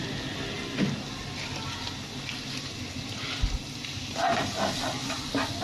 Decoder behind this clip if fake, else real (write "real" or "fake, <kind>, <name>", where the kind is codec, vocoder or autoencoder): real